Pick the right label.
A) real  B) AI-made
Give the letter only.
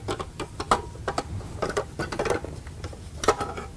A